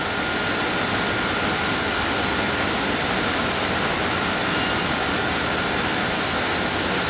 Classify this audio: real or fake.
real